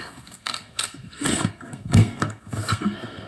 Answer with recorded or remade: remade